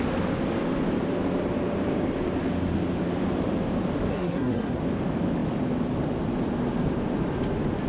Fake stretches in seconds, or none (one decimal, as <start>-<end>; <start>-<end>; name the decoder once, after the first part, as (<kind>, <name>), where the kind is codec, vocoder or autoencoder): 4.1-4.8 (codec, SNAC)